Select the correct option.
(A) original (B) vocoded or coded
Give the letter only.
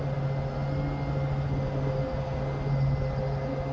A